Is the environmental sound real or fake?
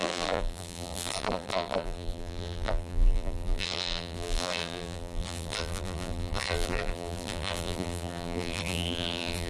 fake